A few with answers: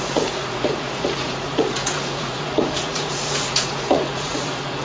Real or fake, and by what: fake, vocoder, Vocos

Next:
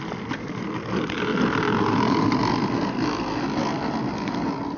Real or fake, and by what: real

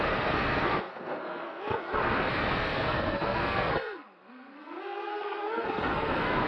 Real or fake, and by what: fake, codec, SNAC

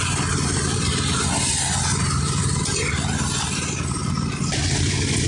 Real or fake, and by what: real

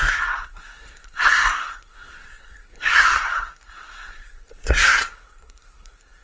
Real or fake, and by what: fake, codec, SNAC